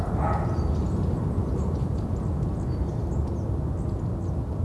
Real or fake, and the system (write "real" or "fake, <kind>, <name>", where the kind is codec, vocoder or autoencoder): real